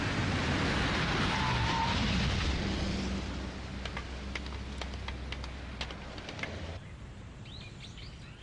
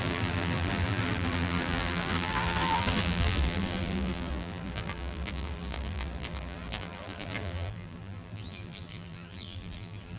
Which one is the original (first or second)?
first